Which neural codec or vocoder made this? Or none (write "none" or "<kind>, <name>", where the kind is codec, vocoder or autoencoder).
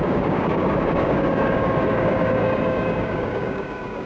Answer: codec, DAC